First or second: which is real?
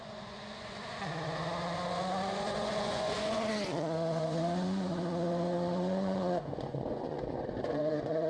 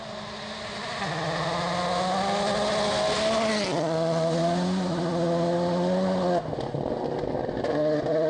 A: second